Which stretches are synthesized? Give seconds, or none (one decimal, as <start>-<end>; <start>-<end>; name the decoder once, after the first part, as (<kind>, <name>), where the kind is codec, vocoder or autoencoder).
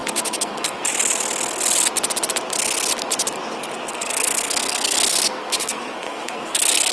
0.0-0.9 (codec, SNAC); 3.9-6.9